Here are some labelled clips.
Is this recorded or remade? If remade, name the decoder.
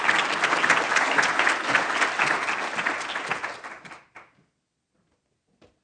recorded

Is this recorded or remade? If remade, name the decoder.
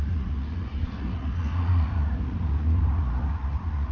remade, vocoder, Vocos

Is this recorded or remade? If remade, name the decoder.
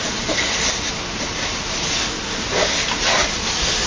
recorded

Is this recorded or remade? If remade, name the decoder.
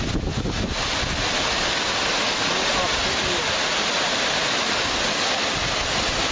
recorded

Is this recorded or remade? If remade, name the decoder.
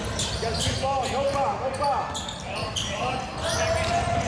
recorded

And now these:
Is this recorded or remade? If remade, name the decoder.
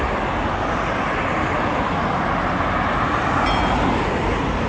recorded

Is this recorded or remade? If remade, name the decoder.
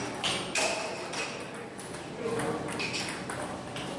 recorded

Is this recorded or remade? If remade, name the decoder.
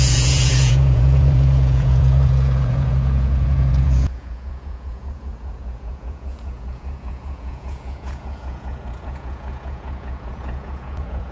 remade, vocoder, Vocos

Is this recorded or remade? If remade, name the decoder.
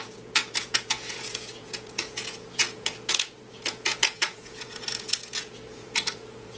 remade, vocoder, Vocos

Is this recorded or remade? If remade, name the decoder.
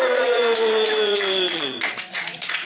remade, vocoder, Vocos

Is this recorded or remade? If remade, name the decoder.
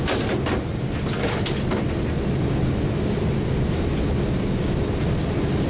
recorded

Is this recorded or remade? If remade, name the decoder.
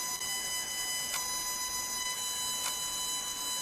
recorded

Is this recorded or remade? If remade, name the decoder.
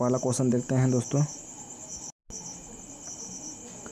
recorded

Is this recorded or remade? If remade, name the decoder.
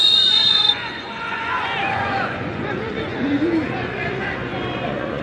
remade, vocoder, Vocos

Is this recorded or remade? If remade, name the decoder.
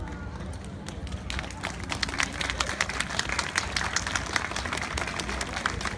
recorded